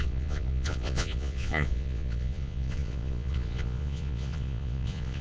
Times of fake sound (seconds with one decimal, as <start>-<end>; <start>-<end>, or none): 0.0-5.2